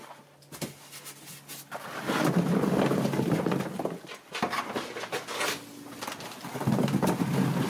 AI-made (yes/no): no